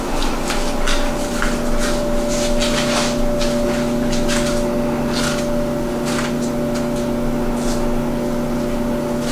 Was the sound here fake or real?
real